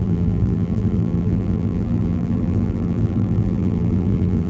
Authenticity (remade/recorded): remade